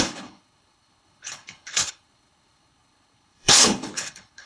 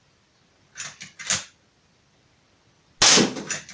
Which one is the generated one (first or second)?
first